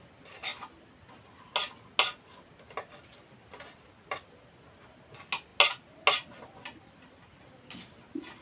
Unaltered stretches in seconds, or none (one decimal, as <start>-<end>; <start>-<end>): 0.0-8.4